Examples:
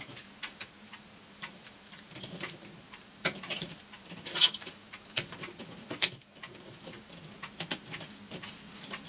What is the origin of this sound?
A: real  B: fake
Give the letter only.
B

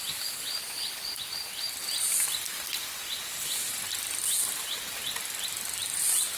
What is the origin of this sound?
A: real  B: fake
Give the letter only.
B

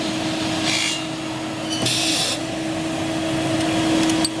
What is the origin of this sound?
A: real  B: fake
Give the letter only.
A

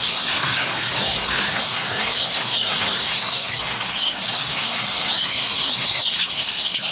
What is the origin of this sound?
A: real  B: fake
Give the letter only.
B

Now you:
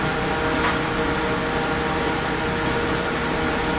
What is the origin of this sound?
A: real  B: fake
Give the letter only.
A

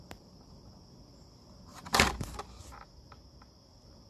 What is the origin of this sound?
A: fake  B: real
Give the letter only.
B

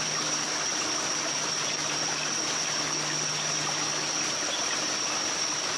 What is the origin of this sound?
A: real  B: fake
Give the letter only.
A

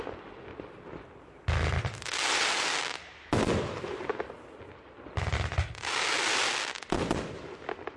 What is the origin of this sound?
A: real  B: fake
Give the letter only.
A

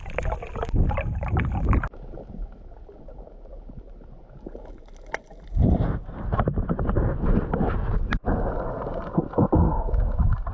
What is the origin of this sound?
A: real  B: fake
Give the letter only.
A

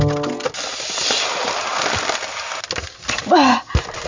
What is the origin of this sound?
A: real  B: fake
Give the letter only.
A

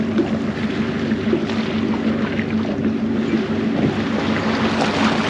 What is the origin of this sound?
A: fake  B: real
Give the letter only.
B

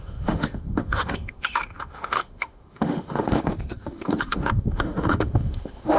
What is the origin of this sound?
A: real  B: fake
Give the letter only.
B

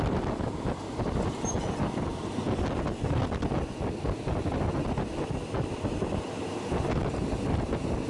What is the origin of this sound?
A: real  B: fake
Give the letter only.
A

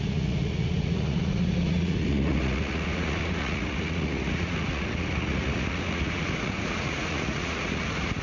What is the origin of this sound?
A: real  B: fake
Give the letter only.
B